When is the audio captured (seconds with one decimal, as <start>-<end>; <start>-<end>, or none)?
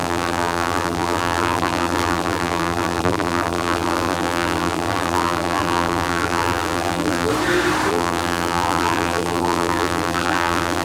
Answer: 7.3-7.9